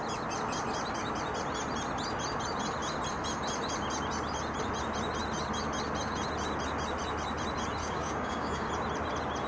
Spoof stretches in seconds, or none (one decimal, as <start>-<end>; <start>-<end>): 7.8-8.7

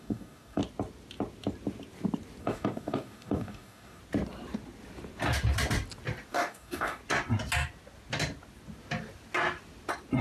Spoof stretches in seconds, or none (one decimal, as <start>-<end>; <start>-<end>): 0.0-0.6; 2.4-4.0; 6.3-7.0

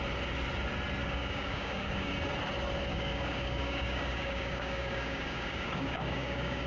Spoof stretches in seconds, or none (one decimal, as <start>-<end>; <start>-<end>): 1.0-2.1; 2.9-6.7

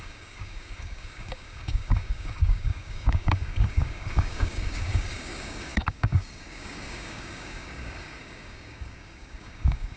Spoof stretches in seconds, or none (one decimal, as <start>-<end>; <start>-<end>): 0.0-10.0